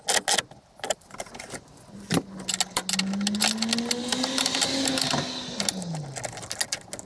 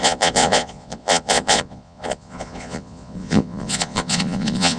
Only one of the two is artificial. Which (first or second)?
second